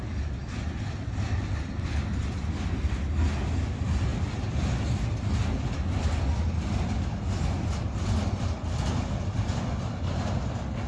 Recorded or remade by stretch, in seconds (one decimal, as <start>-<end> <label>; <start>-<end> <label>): 0.0-10.9 recorded

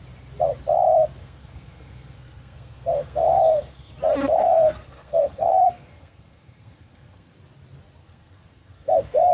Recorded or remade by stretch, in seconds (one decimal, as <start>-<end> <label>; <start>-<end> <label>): 0.0-1.2 recorded; 1.2-3.9 remade; 3.9-4.4 recorded; 4.4-7.3 remade; 7.3-8.0 recorded; 8.0-9.3 remade

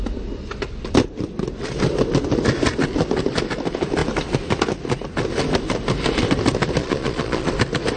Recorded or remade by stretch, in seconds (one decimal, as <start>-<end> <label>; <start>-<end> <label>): 0.0-6.8 recorded; 6.8-7.5 remade; 7.5-8.0 recorded